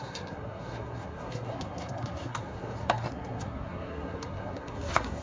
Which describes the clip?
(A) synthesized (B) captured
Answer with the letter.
A